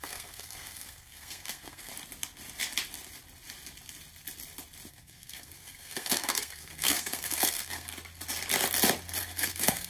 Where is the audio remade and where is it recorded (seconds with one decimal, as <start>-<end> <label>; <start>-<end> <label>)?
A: 0.0-1.9 remade; 1.9-4.9 recorded; 4.9-7.9 remade; 7.9-9.2 recorded; 9.2-9.9 remade